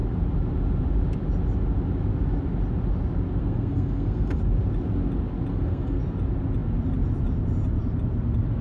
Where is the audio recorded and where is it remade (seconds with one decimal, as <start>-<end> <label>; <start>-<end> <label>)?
0.0-3.4 recorded; 3.4-4.4 remade; 4.4-5.5 recorded; 5.5-6.0 remade; 6.0-8.6 recorded